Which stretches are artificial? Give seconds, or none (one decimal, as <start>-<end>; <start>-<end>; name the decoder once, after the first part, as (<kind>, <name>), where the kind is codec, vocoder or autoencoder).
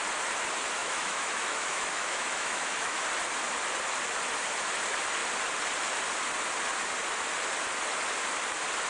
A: 0.8-3.0 (autoencoder, DAC-VAE)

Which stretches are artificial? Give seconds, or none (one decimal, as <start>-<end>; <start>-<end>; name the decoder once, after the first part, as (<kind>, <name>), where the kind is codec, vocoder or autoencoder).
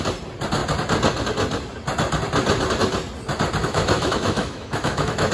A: 3.6-5.3 (autoencoder, DAC-VAE)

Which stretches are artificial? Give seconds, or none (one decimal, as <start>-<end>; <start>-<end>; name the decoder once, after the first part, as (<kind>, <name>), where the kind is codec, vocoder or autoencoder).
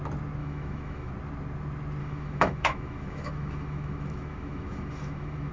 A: 0.4-1.1 (autoencoder, DAC-VAE); 2.0-5.5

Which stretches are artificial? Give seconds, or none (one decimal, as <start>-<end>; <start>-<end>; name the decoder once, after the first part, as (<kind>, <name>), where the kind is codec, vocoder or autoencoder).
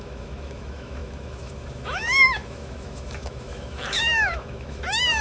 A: 0.0-5.2 (autoencoder, DAC-VAE)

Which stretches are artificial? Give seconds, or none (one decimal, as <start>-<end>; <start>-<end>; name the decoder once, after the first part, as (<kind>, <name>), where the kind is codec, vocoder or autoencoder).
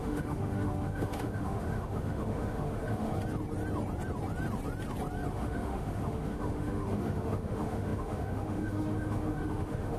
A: 0.0-3.1 (autoencoder, DAC-VAE); 5.3-10.0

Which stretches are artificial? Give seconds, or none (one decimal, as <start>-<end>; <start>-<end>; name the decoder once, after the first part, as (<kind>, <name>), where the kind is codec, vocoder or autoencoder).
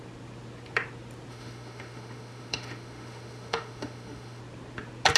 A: 1.3-4.4 (autoencoder, DAC-VAE)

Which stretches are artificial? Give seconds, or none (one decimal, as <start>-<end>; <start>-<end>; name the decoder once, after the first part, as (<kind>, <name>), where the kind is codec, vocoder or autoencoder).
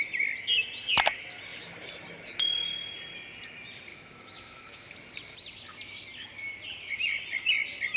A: 3.9-4.9 (autoencoder, DAC-VAE)